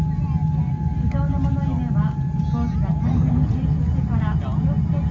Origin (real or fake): real